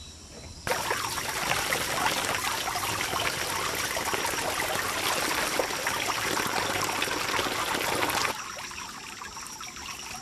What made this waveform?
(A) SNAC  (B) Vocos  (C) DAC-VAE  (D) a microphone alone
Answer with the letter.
D